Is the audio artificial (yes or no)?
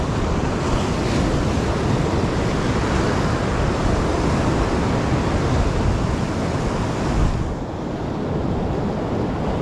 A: no